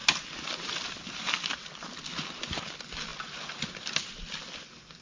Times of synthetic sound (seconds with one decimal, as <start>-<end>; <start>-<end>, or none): none